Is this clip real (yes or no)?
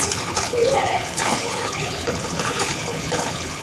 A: no